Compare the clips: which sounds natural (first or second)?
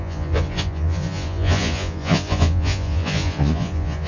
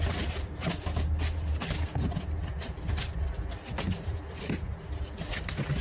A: second